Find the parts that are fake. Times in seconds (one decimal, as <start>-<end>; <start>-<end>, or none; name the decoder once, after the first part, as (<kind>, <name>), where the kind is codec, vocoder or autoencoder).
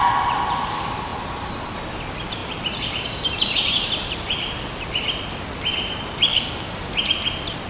6.3-6.9 (codec, DAC)